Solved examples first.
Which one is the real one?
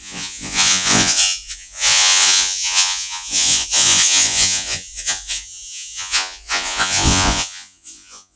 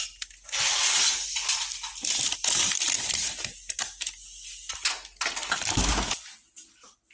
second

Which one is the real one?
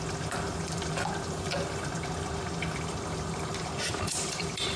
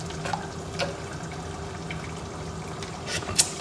second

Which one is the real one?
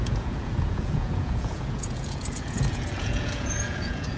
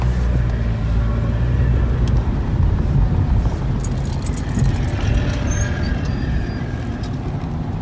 second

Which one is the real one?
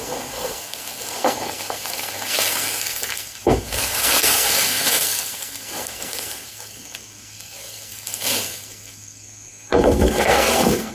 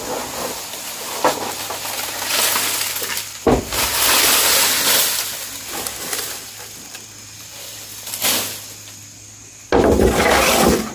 second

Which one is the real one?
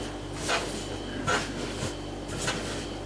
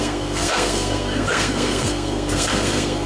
first